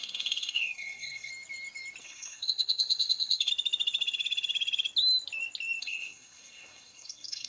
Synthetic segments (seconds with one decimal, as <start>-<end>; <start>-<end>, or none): 0.0-1.3; 2.0-3.5; 5.8-7.5